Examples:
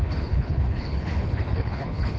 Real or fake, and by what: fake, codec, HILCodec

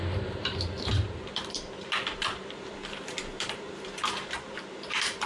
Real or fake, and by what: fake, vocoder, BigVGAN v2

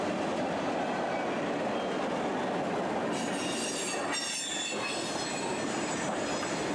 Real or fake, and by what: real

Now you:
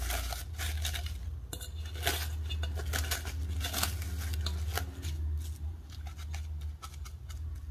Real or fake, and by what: real